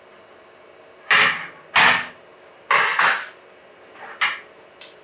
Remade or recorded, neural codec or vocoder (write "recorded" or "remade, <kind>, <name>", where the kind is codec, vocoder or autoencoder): recorded